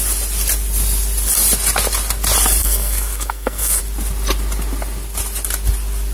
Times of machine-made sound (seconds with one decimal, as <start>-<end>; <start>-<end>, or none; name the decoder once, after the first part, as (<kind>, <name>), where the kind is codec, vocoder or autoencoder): 2.6-3.8 (codec, SNAC)

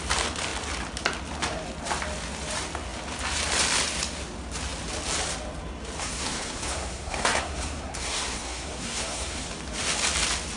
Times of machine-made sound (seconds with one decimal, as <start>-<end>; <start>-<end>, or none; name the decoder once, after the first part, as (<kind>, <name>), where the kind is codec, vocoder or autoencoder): 6.0-9.5 (codec, SNAC)